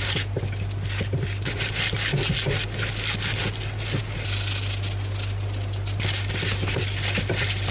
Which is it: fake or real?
real